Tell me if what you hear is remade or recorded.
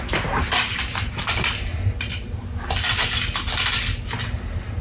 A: recorded